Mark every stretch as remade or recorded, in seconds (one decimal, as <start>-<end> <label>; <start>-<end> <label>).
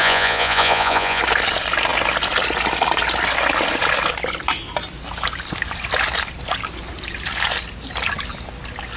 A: 0.0-1.2 remade; 1.2-9.0 recorded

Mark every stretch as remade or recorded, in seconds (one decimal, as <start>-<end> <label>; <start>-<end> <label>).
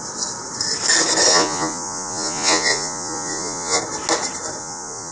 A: 0.0-1.3 recorded; 1.3-3.8 remade; 3.8-4.6 recorded; 4.6-5.1 remade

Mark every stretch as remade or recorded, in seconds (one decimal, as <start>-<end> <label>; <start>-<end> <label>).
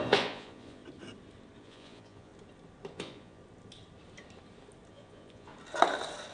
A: 0.0-0.8 remade; 0.8-1.6 recorded; 1.6-2.3 remade; 2.3-2.9 recorded; 2.9-3.4 remade; 3.4-4.9 recorded; 4.9-5.5 remade; 5.5-6.3 recorded